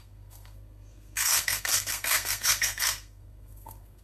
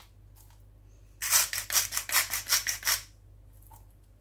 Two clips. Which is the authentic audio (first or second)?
second